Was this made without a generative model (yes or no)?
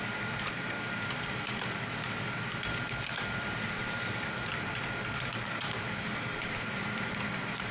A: no